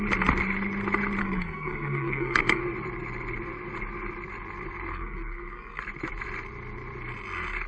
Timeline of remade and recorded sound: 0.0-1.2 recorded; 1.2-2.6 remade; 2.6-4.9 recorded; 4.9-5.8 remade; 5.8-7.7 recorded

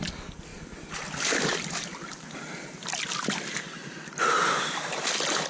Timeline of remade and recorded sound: 0.0-5.5 recorded

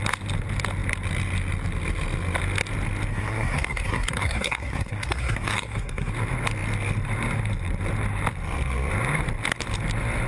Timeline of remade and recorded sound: 0.0-3.1 recorded; 3.1-6.1 remade; 6.1-10.3 recorded

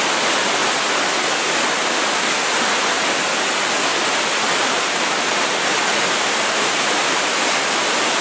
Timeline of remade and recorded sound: 0.0-3.9 recorded; 3.9-6.8 remade; 6.8-8.2 recorded

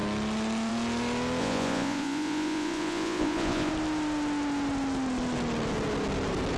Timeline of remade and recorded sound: 0.0-1.4 recorded; 1.4-3.7 remade; 3.7-6.6 recorded